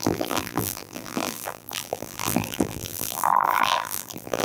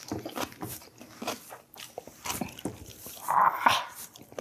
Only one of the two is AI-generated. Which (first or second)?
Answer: first